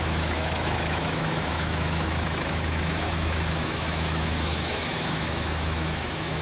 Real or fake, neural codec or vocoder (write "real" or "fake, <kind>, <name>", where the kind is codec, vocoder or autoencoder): fake, autoencoder, DAC-VAE